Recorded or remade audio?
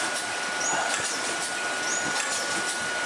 recorded